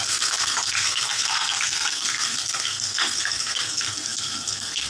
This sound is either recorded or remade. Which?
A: remade